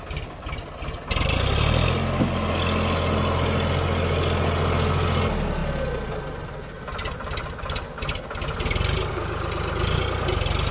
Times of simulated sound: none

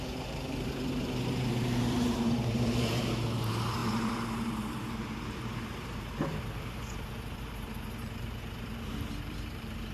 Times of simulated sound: 0.0-9.9 (vocoder, BigVGAN v2)

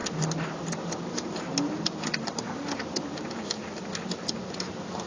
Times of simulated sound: none

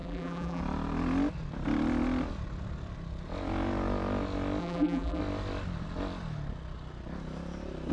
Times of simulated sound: 0.0-0.6 (vocoder, BigVGAN v2); 4.6-5.2